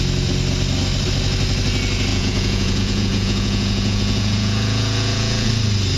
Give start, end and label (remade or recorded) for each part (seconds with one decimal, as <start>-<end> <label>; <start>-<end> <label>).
0.0-2.1 recorded; 2.1-5.5 remade; 5.5-6.0 recorded